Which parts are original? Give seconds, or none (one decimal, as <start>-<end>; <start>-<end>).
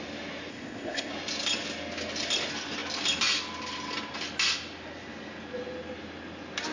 0.0-0.5; 1.1-6.7